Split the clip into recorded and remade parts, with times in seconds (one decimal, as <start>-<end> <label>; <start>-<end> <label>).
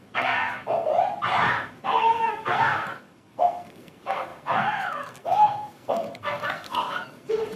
0.0-0.9 remade; 0.9-1.5 recorded; 1.5-7.6 remade